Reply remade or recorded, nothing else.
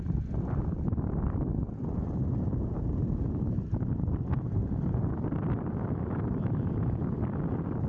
recorded